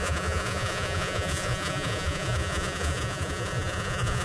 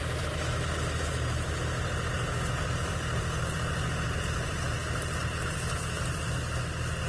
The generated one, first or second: first